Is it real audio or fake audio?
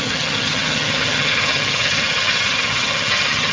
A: fake